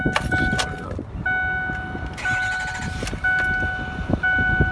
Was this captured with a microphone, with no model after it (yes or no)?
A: yes